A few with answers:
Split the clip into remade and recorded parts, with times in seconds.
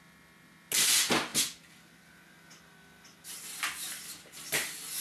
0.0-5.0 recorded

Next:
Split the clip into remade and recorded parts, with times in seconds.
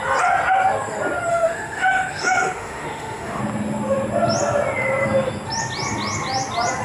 0.0-1.3 recorded; 1.3-3.4 remade; 3.4-6.8 recorded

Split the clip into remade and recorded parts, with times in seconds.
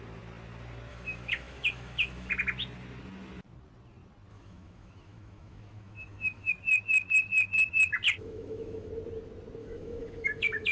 0.0-0.9 recorded; 0.9-2.3 remade; 2.3-4.3 recorded; 4.3-6.5 remade; 6.5-8.2 recorded; 8.2-8.9 remade; 8.9-9.6 recorded; 9.6-10.7 remade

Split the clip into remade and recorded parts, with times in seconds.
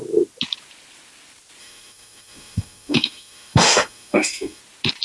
0.0-1.6 recorded; 1.6-4.6 remade; 4.6-5.0 recorded